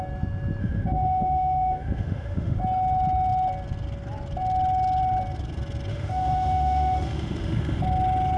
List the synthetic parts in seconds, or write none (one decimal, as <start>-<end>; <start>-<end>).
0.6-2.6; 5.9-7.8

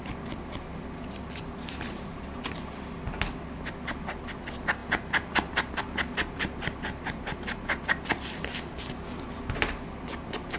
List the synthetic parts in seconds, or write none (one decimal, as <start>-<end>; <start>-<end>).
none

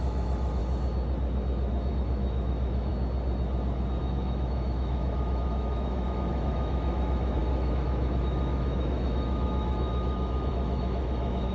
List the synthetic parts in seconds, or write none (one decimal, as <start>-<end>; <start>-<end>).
0.0-0.6; 1.9-2.9; 4.0-11.5

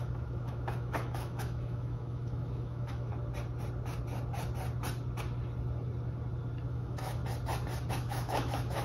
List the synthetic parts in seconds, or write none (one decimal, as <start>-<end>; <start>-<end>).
0.0-3.1; 6.7-7.2; 7.9-8.8

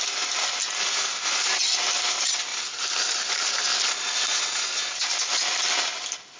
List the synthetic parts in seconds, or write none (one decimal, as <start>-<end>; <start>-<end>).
none

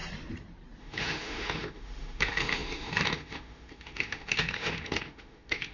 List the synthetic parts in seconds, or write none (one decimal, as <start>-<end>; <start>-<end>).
0.8-5.7

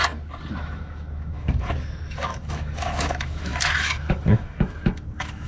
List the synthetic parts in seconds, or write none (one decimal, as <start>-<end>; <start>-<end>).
0.6-5.5

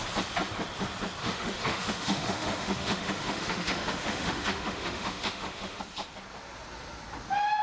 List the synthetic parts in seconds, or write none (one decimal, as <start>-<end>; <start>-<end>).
1.2-5.8